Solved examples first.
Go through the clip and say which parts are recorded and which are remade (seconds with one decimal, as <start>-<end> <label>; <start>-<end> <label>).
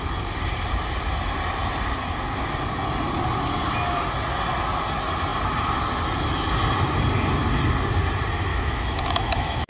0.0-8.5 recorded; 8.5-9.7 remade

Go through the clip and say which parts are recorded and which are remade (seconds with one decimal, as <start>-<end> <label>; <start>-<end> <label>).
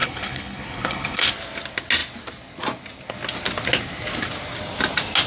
0.0-1.3 remade; 1.3-5.3 recorded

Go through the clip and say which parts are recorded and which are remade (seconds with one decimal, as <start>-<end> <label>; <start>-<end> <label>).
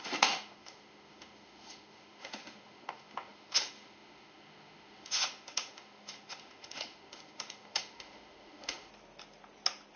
0.0-8.9 remade; 8.9-10.0 recorded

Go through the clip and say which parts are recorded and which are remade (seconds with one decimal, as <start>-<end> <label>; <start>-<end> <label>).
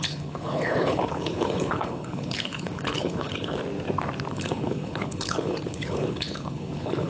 0.0-3.6 remade; 3.6-4.3 recorded; 4.3-7.1 remade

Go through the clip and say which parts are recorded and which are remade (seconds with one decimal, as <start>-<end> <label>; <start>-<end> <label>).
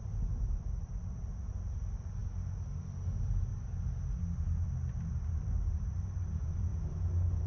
0.0-3.5 recorded; 3.5-4.2 remade; 4.2-7.5 recorded